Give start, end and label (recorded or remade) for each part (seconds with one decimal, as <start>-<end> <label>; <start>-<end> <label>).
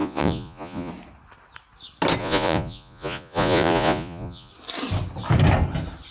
0.0-0.9 remade; 0.9-2.2 recorded; 2.2-4.5 remade; 4.5-6.1 recorded